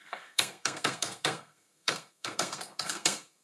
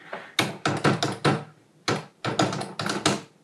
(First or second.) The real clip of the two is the second